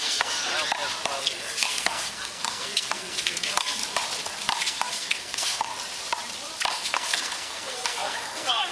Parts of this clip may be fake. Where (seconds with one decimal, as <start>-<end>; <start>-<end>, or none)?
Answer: 0.0-0.5; 1.2-3.8; 4.6-5.7; 6.7-8.7